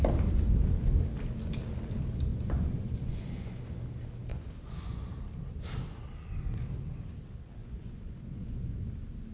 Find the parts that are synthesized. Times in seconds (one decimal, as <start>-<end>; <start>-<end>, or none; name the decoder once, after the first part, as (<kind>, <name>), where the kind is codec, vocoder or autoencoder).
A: 2.3-3.6 (vocoder, Vocos); 4.3-5.1; 7.6-8.9